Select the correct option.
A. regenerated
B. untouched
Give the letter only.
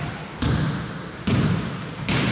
B